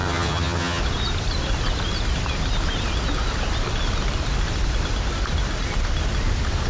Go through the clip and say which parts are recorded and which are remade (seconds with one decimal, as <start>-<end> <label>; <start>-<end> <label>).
0.0-0.8 remade; 0.8-6.7 recorded